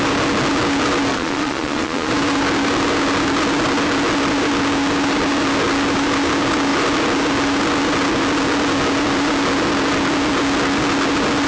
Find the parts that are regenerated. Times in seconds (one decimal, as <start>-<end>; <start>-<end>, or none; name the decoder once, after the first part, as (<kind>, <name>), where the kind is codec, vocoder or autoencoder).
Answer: 1.1-2.1 (vocoder, Vocos)